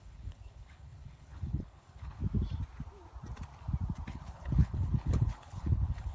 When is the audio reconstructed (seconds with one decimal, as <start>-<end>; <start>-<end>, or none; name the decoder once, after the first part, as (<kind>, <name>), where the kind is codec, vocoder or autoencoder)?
0.0-2.2 (codec, HILCodec); 4.1-6.1